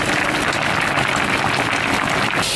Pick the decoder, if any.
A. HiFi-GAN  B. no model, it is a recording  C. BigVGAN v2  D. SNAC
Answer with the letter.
B